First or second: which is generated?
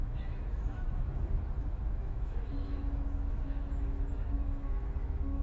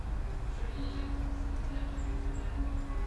first